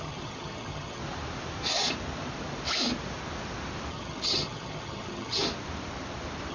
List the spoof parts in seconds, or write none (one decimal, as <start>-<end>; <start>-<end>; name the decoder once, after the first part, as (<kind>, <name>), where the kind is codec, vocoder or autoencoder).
0.0-1.0 (vocoder, HiFi-GAN); 3.9-5.4